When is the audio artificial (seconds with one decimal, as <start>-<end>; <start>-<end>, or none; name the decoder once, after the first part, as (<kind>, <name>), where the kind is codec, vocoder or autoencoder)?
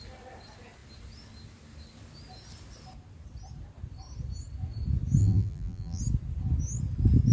5.2-6.0 (vocoder, BigVGAN v2)